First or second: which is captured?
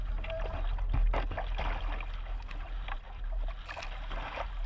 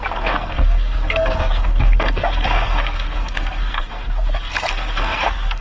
first